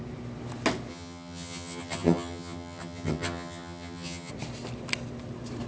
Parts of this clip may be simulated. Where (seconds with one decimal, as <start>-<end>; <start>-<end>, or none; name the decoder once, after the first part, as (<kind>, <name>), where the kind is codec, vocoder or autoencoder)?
0.9-4.3 (vocoder, HiFi-GAN)